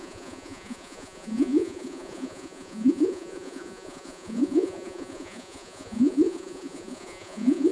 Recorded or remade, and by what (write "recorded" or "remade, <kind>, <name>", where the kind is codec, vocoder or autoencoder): remade, vocoder, Vocos